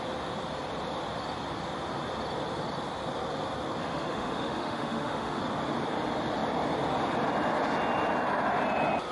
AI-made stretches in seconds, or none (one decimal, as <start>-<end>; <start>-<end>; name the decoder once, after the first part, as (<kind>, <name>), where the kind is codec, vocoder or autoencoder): 3.8-5.4 (autoencoder, DAC-VAE)